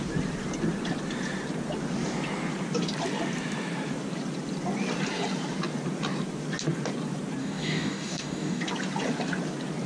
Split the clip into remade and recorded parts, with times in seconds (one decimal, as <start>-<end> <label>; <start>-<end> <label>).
0.0-7.4 recorded; 7.4-8.6 remade; 8.6-9.9 recorded